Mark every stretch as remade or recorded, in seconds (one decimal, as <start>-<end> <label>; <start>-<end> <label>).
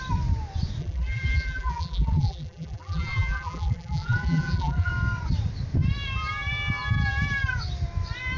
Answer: 0.0-0.8 recorded; 0.8-4.9 remade; 4.9-8.4 recorded